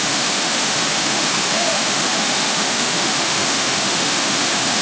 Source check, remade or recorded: remade